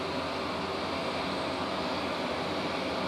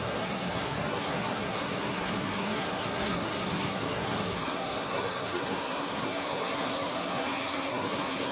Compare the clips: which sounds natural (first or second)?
first